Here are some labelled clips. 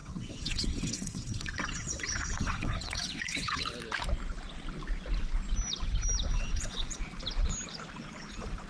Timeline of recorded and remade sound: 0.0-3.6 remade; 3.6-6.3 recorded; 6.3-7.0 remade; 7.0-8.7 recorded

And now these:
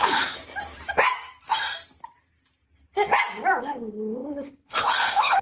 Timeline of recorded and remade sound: 0.0-0.4 remade; 0.4-3.6 recorded; 3.6-5.4 remade

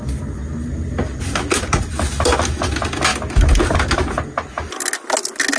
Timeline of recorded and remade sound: 0.0-5.6 recorded